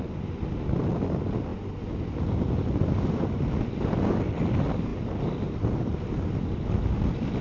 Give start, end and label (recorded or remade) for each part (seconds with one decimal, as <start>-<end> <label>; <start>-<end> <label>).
0.0-7.4 recorded